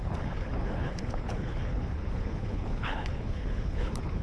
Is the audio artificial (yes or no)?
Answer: yes